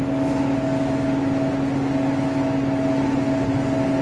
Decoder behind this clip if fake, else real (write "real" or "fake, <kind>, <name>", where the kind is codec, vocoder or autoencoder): real